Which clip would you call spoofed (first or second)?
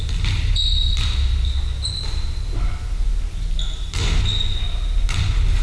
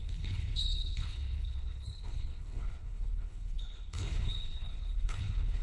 second